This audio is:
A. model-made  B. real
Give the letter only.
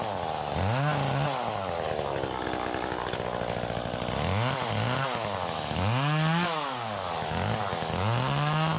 B